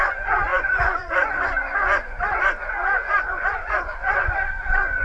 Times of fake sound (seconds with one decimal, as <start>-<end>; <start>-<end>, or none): 0.0-5.0